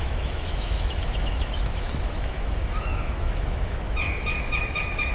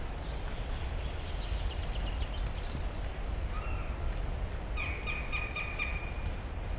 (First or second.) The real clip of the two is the second